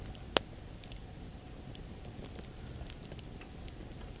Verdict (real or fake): real